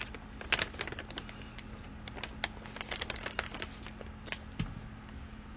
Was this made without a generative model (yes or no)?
yes